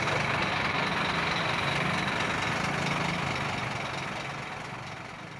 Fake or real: real